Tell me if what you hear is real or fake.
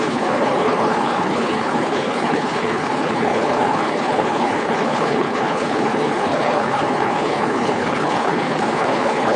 fake